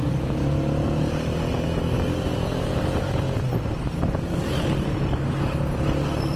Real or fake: real